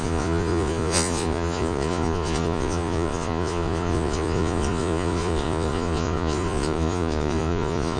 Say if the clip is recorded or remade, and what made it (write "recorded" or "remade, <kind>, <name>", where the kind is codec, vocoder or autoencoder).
remade, vocoder, Vocos